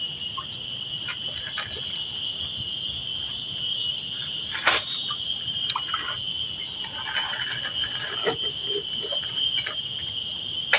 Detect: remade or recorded recorded